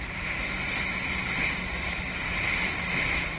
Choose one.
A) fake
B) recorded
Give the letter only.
B